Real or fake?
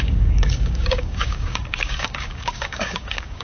fake